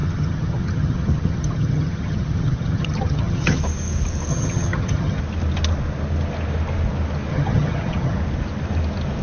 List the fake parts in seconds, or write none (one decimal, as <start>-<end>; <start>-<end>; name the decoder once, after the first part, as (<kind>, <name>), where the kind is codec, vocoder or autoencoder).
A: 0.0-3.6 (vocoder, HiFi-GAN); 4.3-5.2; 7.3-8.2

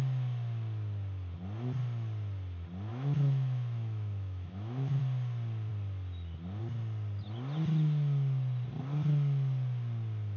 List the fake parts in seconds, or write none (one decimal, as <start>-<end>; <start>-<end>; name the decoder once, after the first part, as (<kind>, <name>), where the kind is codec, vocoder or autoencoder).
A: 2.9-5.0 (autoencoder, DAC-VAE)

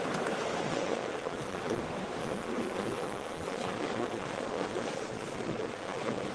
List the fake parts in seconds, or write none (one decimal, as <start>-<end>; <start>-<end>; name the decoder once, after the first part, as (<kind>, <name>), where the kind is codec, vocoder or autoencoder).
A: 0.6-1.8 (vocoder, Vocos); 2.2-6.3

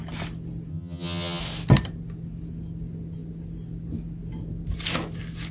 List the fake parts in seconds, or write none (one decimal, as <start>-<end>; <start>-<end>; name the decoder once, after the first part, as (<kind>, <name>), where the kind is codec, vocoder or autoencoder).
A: 0.7-1.4 (vocoder, HiFi-GAN)

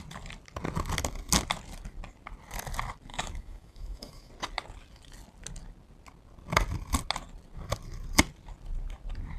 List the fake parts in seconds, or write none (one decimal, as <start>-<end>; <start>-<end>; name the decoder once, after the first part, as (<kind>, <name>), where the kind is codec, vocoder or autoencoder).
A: 3.1-4.3 (autoencoder, DAC-VAE)